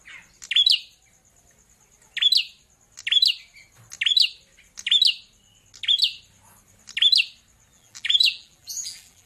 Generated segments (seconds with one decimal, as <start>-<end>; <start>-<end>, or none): 7.7-9.3